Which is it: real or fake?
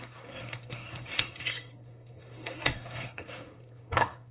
fake